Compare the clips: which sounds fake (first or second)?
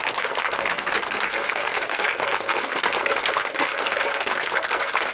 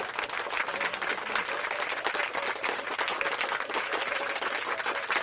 first